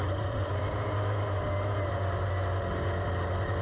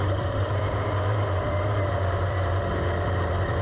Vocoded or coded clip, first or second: second